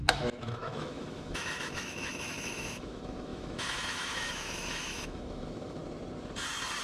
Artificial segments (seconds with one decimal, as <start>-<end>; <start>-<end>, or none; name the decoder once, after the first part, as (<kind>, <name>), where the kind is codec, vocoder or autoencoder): 0.0-5.8 (autoencoder, DAC-VAE)